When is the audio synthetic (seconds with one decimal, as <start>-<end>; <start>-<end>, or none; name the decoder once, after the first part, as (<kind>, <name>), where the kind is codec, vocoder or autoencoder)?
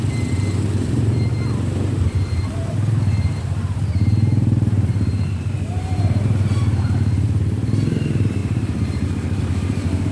0.0-1.3 (vocoder, BigVGAN v2); 2.0-10.1